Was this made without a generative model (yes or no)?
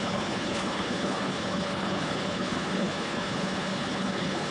no